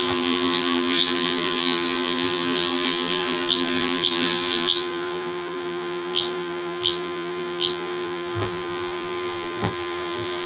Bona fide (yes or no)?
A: no